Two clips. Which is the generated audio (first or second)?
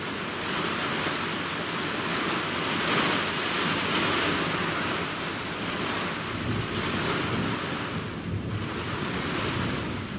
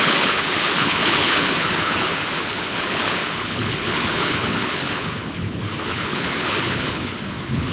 second